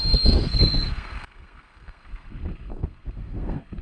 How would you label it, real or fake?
fake